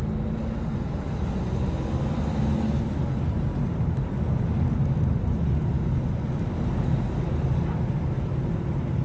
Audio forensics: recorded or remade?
recorded